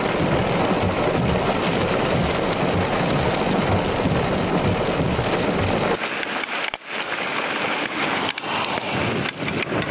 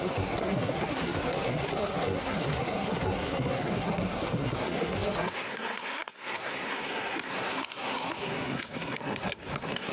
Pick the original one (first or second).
first